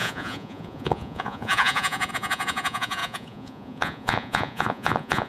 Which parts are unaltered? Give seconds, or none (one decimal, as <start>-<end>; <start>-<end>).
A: none